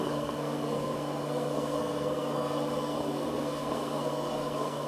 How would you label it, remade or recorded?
remade